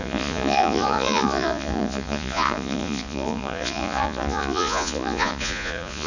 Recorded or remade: remade